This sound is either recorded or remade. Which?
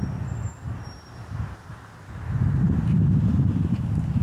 recorded